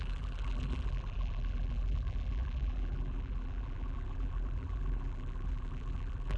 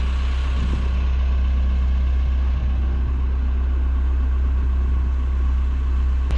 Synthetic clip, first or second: first